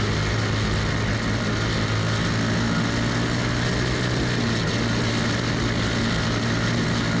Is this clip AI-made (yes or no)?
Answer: no